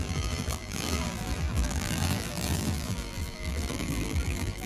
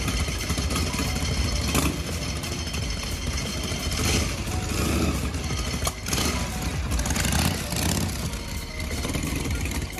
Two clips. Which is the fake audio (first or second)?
first